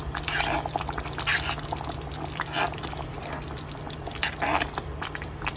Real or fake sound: fake